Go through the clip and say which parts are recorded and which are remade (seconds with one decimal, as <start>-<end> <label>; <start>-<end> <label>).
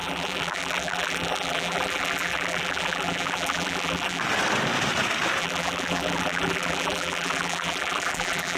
0.0-4.2 remade; 4.2-5.4 recorded; 5.4-8.6 remade